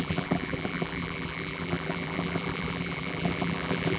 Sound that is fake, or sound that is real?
fake